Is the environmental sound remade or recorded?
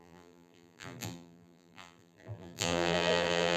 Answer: remade